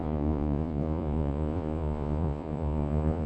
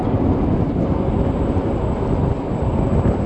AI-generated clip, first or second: first